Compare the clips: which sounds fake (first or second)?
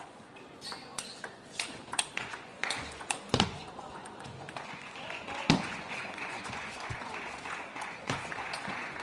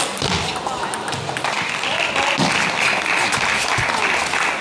first